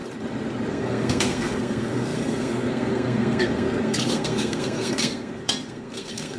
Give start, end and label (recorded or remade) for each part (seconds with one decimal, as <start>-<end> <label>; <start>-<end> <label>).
0.0-0.7 recorded; 0.7-6.4 remade